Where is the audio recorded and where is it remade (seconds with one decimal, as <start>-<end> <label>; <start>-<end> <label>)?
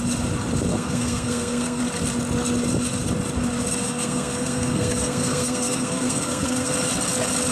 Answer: 0.0-0.7 recorded; 0.7-1.8 remade; 1.8-3.8 recorded; 3.8-6.7 remade; 6.7-7.5 recorded